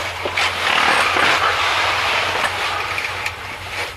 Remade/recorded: recorded